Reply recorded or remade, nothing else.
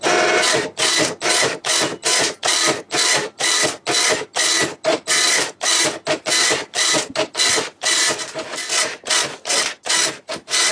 recorded